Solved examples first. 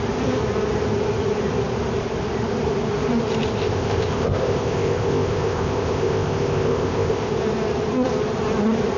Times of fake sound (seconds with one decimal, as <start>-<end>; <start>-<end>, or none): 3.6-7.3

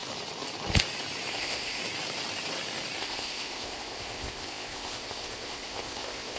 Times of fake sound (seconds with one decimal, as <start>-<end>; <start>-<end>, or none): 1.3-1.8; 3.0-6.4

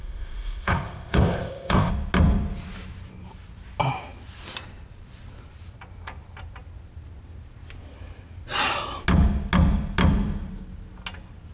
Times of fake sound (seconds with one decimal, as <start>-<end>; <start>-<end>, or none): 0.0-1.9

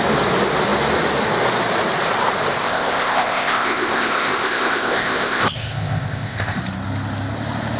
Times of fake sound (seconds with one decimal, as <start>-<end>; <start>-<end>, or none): 2.6-6.6

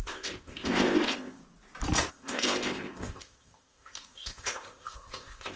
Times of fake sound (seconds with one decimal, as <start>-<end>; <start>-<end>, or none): 0.0-1.4; 2.1-5.6

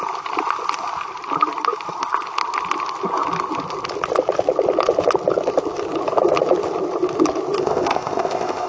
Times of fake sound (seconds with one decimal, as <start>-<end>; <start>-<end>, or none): 7.6-8.7